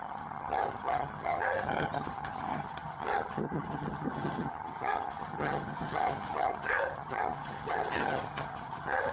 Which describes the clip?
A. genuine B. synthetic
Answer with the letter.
B